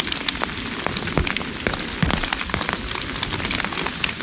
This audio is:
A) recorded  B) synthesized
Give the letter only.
A